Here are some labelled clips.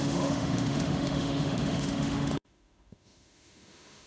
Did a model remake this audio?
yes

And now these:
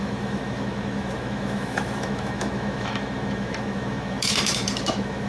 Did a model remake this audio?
yes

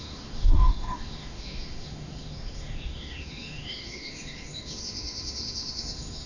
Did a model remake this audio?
yes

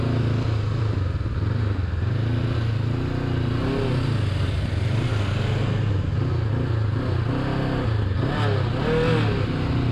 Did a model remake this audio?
no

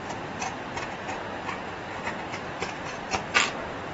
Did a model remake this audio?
no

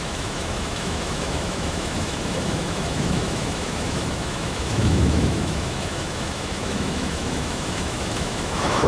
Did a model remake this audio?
yes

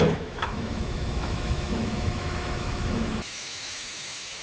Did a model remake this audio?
yes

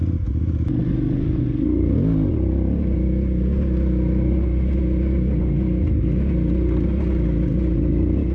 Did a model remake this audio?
no